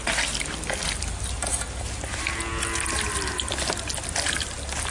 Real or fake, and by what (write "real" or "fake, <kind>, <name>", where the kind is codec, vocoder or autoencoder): real